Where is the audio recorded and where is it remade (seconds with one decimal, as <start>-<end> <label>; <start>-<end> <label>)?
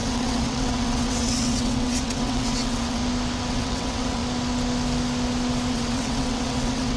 0.0-3.0 remade; 3.0-3.5 recorded; 3.5-4.2 remade; 4.2-5.7 recorded; 5.7-7.0 remade